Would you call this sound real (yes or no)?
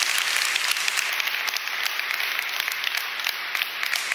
yes